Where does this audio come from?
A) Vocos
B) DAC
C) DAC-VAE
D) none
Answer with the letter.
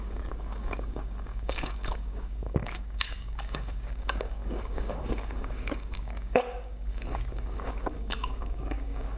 B